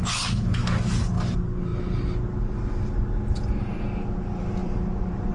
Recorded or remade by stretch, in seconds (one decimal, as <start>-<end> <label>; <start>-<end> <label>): 0.0-4.6 recorded; 4.6-5.3 remade